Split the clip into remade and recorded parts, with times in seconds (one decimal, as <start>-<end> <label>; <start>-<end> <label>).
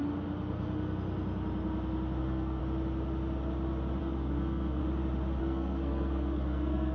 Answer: 0.0-2.2 recorded; 2.2-2.6 remade; 2.6-4.0 recorded; 4.0-4.8 remade; 4.8-5.4 recorded; 5.4-6.9 remade